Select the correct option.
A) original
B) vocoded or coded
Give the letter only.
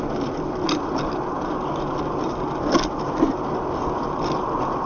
A